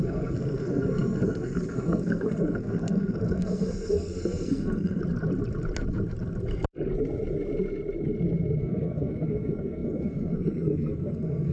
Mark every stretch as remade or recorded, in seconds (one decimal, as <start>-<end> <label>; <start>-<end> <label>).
0.0-5.0 remade; 5.0-8.6 recorded; 8.6-11.5 remade